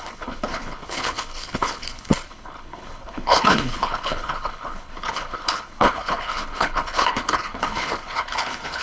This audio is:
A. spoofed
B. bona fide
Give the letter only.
A